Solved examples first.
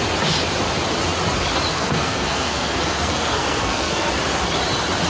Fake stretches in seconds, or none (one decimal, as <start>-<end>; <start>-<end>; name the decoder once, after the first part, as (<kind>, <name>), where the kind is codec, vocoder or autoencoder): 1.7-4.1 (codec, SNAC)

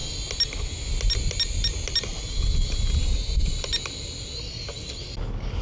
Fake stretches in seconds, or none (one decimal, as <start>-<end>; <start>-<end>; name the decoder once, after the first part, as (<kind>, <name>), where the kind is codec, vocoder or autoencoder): none

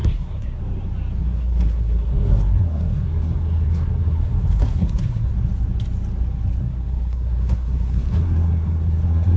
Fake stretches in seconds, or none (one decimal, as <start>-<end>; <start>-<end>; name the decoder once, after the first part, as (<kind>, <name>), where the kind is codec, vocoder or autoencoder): 0.0-0.6 (codec, SNAC); 1.2-5.3; 6.6-9.4